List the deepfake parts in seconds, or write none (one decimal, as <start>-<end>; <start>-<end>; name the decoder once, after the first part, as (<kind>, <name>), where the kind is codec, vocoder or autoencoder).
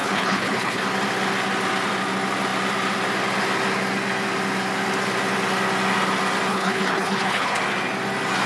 0.0-0.8 (codec, HILCodec); 6.5-7.6